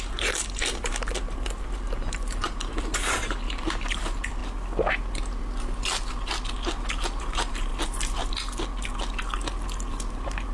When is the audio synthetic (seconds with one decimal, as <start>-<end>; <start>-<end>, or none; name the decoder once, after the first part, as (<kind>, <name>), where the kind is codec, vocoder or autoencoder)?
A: 0.0-4.4 (vocoder, BigVGAN v2); 7.2-7.7; 10.1-10.5